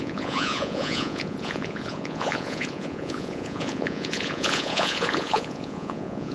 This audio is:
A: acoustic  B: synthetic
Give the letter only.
B